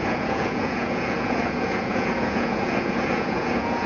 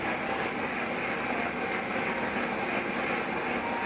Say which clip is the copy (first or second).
first